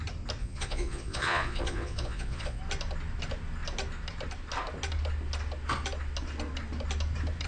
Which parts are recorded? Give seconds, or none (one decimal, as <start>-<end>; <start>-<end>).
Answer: 0.0-0.4; 2.6-7.5